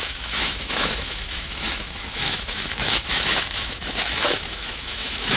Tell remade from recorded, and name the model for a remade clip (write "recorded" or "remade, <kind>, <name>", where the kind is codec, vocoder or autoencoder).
remade, autoencoder, DAC-VAE